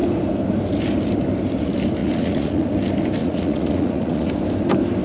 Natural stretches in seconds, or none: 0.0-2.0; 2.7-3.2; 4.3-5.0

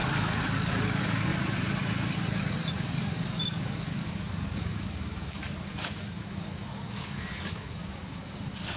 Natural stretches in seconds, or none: 1.3-2.7

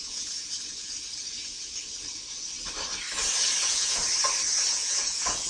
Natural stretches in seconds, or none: 0.4-3.6; 4.0-4.7

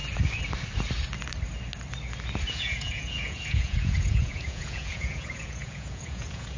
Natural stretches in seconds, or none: 0.0-2.5